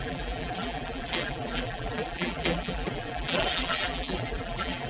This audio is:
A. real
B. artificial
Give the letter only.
B